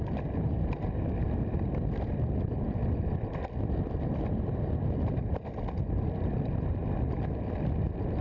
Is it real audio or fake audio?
real